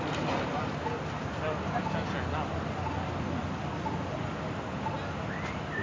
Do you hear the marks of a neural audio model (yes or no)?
no